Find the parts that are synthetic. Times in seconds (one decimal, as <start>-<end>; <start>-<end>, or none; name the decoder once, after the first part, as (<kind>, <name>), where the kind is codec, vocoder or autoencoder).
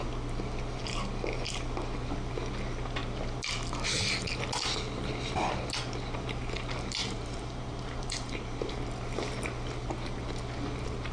7.0-8.7 (vocoder, BigVGAN v2)